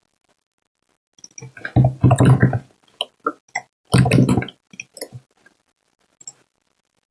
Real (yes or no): yes